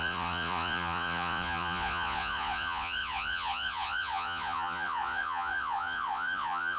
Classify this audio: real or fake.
fake